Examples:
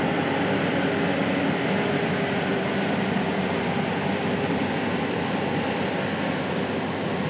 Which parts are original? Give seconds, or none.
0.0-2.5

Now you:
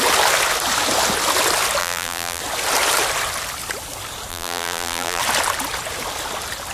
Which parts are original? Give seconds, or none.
0.0-1.8; 2.4-4.3; 5.2-6.7

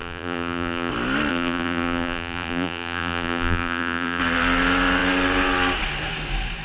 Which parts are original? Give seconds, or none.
0.9-1.3; 4.2-6.6

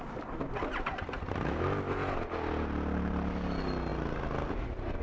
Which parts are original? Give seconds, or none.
0.0-5.0

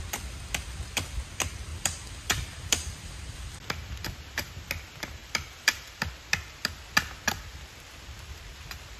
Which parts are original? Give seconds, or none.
0.0-1.7; 3.6-5.2; 6.1-9.0

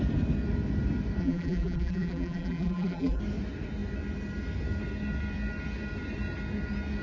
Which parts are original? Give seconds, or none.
0.0-1.2; 3.2-7.0

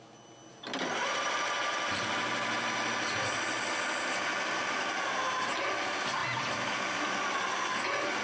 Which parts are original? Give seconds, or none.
0.0-0.5; 2.1-8.2